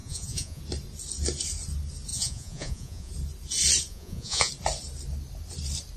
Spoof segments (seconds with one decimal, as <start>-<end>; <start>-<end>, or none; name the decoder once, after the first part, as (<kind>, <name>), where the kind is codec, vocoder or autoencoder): 0.0-0.6 (vocoder, Vocos); 2.1-3.1; 3.9-4.5